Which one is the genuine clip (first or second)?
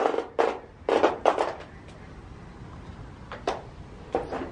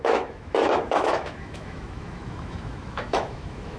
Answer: first